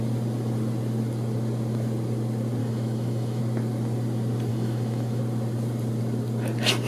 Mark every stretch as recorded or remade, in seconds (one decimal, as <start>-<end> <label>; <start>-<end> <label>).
0.0-2.6 recorded; 2.6-3.4 remade; 3.4-4.5 recorded; 4.5-5.2 remade; 5.2-6.9 recorded